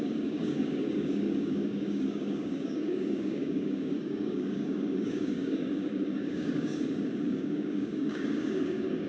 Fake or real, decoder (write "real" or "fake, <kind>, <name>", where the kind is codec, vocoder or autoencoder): fake, codec, DAC